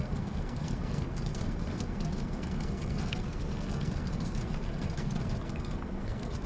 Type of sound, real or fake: fake